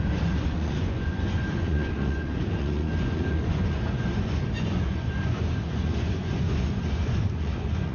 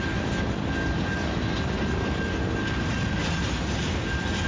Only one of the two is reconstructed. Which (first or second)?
first